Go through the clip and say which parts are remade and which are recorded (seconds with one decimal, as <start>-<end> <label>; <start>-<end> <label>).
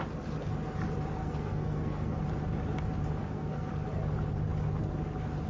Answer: 0.0-1.2 recorded; 1.2-2.2 remade; 2.2-3.2 recorded; 3.2-3.7 remade; 3.7-5.5 recorded